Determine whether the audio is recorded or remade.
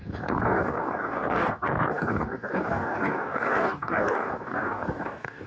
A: remade